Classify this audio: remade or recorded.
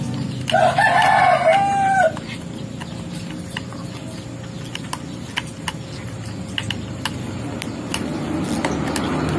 recorded